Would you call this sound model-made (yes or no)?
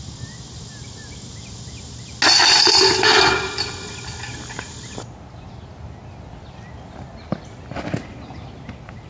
no